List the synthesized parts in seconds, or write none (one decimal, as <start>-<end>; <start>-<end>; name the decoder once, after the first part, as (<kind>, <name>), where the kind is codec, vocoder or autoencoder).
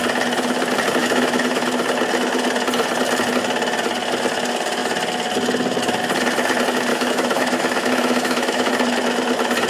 1.0-1.6 (autoencoder, DAC-VAE); 6.9-8.7